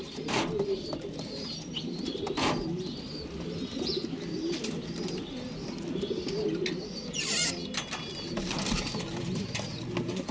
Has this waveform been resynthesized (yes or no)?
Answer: no